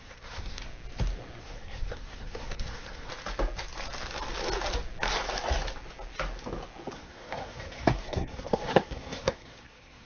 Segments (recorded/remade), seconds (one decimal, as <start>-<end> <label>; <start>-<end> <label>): 0.0-0.6 remade; 0.6-1.4 recorded; 1.4-3.1 remade; 3.1-6.9 recorded; 6.9-10.1 remade